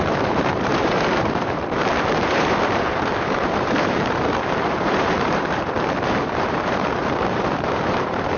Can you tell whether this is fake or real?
fake